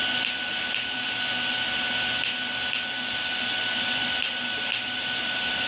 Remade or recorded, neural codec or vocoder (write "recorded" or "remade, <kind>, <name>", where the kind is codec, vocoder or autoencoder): recorded